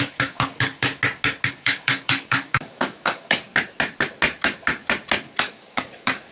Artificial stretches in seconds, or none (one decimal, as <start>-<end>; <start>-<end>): 0.0-0.9; 1.5-3.5; 5.4-6.3